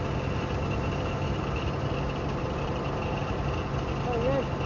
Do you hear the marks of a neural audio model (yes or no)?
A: no